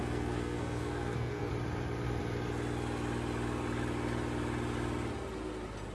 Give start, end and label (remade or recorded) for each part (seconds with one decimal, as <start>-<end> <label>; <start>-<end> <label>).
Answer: 0.0-1.5 remade; 1.5-5.9 recorded